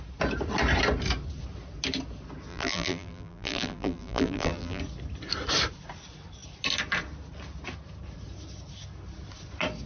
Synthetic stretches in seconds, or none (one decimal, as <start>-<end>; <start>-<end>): 2.5-4.8